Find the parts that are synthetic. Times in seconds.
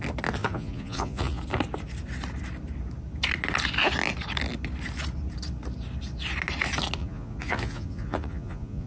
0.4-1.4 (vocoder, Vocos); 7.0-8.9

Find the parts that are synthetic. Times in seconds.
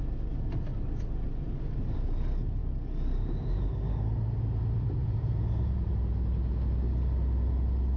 5.0-5.9 (vocoder, Vocos)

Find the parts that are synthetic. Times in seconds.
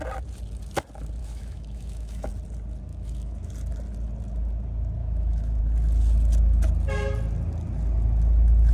1.2-2.3 (autoencoder, DAC-VAE); 2.9-3.5; 5.0-5.6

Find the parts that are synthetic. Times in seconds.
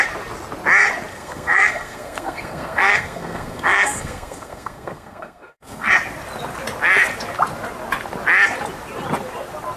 1.1-5.9 (codec, SNAC)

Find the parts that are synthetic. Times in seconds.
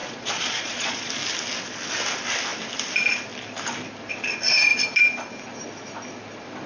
0.0-1.1 (vocoder, Vocos)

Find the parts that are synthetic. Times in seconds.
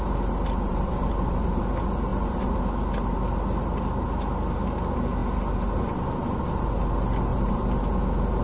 0.7-1.6 (vocoder, BigVGAN v2); 2.1-2.6; 7.3-7.8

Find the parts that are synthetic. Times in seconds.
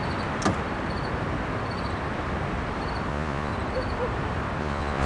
3.1-3.5 (vocoder, Vocos); 4.6-5.1